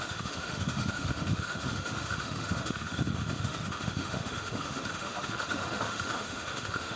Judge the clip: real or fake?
fake